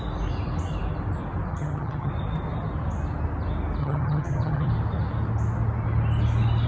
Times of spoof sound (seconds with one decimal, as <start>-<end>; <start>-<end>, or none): 1.5-2.1; 3.8-4.7